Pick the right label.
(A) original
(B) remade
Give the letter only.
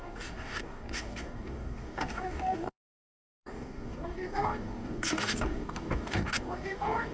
B